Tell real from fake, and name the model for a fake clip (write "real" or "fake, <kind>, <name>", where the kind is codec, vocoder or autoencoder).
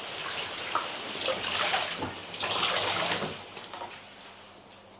real